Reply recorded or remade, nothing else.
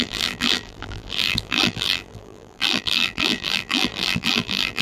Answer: remade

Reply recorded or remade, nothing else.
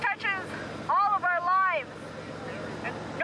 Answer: recorded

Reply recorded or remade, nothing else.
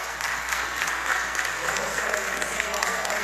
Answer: remade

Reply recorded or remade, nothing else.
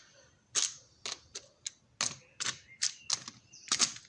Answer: recorded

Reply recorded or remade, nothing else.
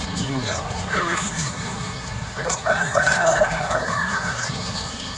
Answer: remade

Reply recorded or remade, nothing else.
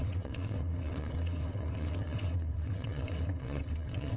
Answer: remade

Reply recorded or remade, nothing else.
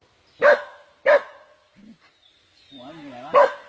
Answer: recorded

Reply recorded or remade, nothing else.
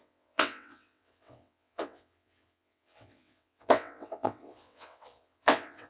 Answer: remade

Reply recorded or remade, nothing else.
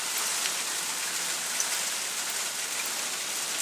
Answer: recorded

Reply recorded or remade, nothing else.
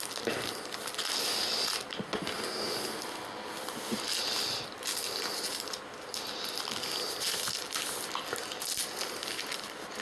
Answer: recorded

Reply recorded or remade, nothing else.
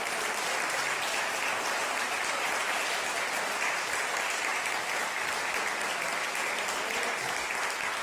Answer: recorded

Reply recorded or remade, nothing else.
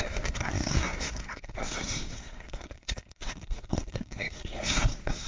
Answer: remade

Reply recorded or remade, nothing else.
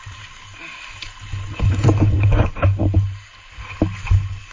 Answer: recorded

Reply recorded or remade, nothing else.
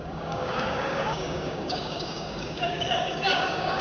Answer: remade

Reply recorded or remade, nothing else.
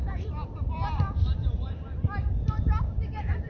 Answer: remade